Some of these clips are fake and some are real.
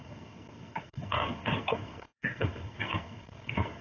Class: fake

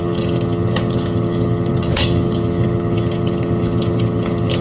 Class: fake